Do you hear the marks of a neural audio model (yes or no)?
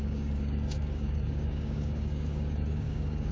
yes